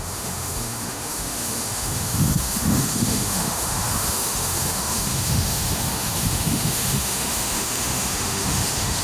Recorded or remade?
remade